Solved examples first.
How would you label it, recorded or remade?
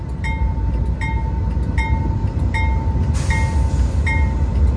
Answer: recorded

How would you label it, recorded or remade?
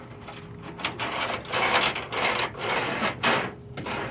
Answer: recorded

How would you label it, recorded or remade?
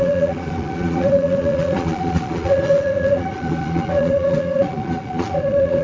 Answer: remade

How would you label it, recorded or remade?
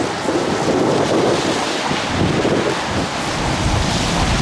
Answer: recorded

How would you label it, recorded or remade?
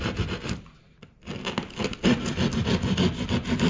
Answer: recorded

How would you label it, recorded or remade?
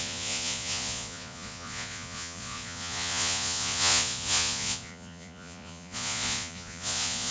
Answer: remade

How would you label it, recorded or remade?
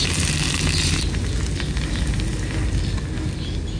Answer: recorded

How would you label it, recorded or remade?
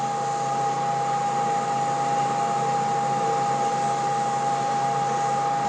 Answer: recorded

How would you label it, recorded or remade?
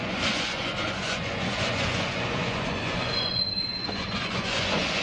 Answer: remade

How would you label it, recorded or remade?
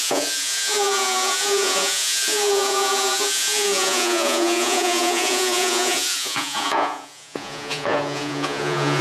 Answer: remade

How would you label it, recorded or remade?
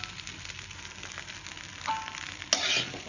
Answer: recorded